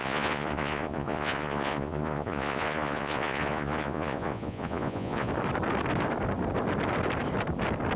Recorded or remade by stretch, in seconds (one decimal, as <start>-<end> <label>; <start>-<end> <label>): 0.0-5.3 remade; 5.3-8.0 recorded